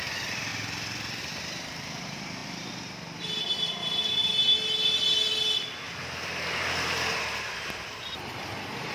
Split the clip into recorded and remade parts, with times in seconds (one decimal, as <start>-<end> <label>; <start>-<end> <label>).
0.0-0.5 remade; 0.5-1.2 recorded; 1.2-5.3 remade; 5.3-6.0 recorded; 6.0-8.9 remade